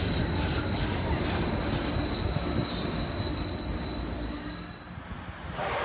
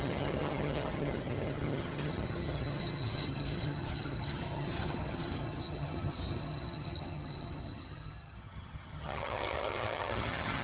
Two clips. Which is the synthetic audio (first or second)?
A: second